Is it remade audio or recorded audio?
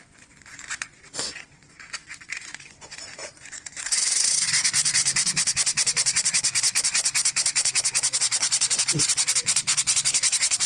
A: remade